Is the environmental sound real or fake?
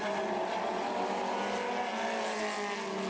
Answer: real